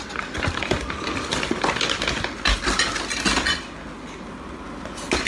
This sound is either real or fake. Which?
real